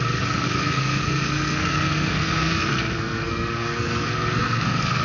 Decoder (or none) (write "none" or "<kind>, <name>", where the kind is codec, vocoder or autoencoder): codec, SNAC